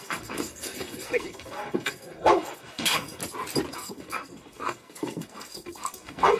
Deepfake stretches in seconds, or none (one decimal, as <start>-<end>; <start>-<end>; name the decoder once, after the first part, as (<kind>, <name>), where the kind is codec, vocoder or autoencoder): 0.0-3.2 (codec, SNAC); 3.7-6.4